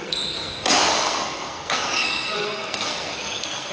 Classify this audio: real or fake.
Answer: fake